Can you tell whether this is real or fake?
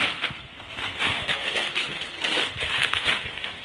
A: fake